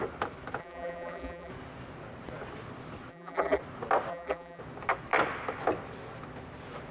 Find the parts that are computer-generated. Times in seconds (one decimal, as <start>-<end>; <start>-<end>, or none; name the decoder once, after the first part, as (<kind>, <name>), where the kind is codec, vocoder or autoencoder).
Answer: 0.6-1.5 (vocoder, BigVGAN v2); 3.1-3.6; 4.1-4.6